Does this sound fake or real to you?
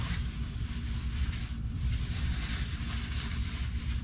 fake